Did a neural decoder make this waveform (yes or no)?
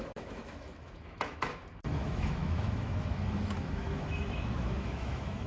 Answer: yes